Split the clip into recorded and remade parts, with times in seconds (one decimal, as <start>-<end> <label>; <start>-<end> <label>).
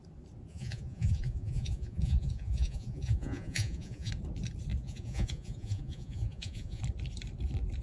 0.0-0.5 recorded; 0.5-4.1 remade; 4.1-4.8 recorded; 4.8-6.8 remade; 6.8-7.8 recorded